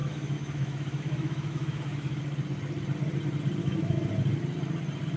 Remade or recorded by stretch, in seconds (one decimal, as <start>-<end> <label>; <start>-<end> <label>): 0.0-2.2 remade; 2.2-3.6 recorded; 3.6-4.1 remade; 4.1-5.2 recorded